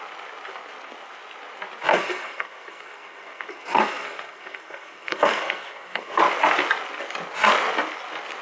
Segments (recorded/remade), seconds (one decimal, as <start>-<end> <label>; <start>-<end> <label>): 0.0-1.9 recorded; 1.9-6.2 remade; 6.2-8.4 recorded